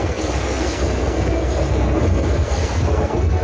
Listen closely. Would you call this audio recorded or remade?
remade